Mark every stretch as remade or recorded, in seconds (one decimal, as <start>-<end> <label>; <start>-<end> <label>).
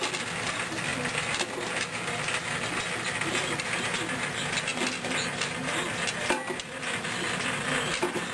0.0-8.3 recorded